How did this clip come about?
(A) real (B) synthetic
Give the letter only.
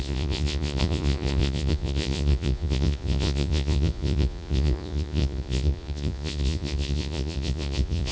B